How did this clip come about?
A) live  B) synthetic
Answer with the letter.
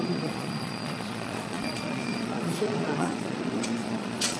B